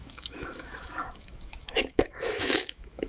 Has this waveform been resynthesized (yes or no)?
yes